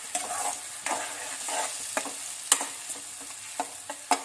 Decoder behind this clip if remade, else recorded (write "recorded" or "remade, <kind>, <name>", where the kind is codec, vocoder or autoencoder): recorded